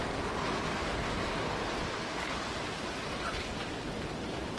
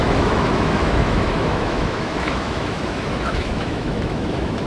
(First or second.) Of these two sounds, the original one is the first